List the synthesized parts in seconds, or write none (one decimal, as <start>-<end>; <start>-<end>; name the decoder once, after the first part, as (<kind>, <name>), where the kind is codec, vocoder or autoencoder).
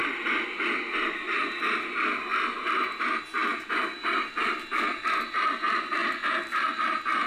none